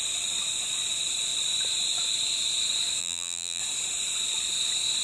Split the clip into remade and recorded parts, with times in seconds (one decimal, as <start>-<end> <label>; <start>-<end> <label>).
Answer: 0.0-3.0 recorded; 3.0-3.6 remade; 3.6-5.0 recorded